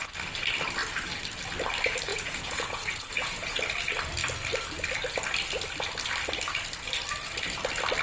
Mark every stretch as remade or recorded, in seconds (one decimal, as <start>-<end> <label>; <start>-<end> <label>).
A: 0.0-2.1 recorded; 2.1-3.6 remade; 3.6-8.0 recorded